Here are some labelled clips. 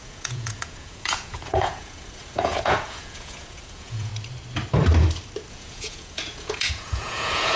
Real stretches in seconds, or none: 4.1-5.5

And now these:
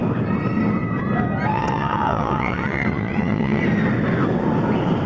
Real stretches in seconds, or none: 0.0-1.5; 3.6-5.1

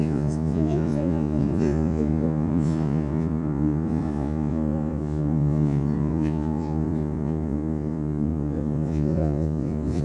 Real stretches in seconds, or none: none

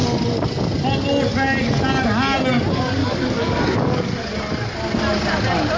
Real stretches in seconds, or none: 0.0-3.0; 4.3-5.8

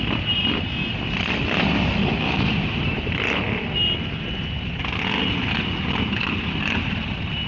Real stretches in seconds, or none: 0.0-2.0; 3.2-7.5

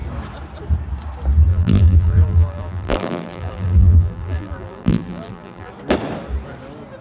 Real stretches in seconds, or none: 0.0-1.5; 5.7-7.0

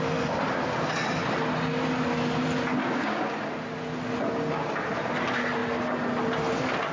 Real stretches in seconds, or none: 0.0-2.8; 3.4-6.9